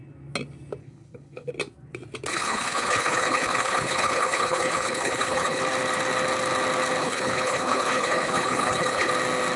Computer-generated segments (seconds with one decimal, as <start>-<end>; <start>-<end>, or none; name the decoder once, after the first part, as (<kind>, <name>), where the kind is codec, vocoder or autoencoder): 0.8-1.5 (codec, HILCodec); 2.3-5.6; 7.0-9.1